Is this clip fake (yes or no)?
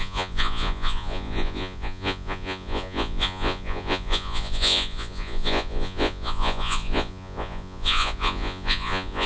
yes